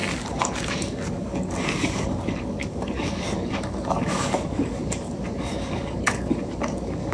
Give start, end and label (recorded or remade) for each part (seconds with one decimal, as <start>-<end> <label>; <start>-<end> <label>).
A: 0.0-7.1 remade